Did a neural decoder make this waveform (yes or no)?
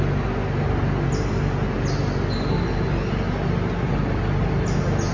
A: no